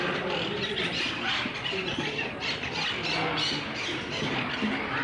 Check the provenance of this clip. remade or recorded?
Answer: recorded